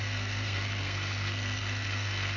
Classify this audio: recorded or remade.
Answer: remade